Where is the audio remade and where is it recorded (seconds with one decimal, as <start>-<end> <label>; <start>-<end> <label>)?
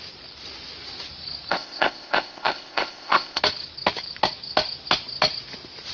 0.0-1.5 recorded; 1.5-3.4 remade; 3.4-5.9 recorded